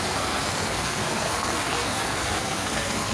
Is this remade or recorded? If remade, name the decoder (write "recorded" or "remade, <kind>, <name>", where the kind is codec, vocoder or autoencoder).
remade, codec, SNAC